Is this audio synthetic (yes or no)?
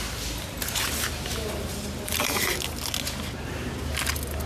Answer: no